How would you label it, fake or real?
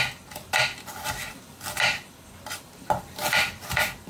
real